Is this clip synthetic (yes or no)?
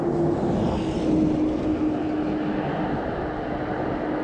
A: no